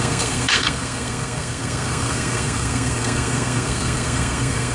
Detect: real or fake fake